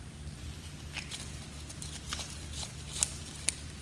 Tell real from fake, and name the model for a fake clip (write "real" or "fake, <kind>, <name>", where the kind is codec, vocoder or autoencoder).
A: real